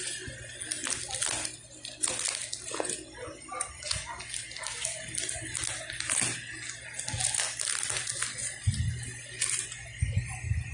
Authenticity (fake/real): real